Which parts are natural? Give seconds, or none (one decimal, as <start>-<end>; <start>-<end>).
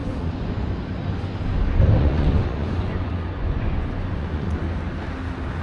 0.7-2.0; 4.6-5.6